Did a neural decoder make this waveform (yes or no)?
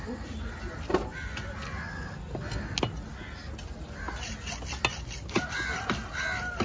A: no